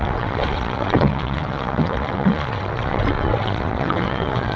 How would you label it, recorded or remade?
remade